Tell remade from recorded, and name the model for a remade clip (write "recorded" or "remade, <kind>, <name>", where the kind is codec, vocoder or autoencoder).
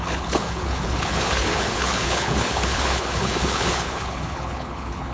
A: remade, codec, HILCodec